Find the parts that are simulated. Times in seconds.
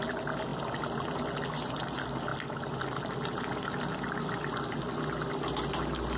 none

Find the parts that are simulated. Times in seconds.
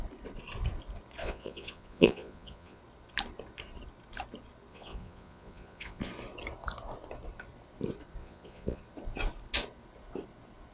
1.2-2.8 (vocoder, Vocos); 4.7-6.1; 8.2-8.8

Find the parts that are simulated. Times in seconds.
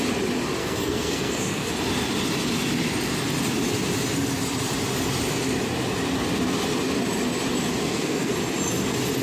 0.6-1.7 (codec, SNAC); 7.8-8.3